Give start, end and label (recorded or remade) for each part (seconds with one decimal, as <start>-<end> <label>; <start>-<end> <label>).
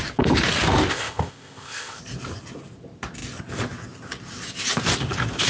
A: 0.0-0.9 recorded; 0.9-2.0 remade; 2.0-5.5 recorded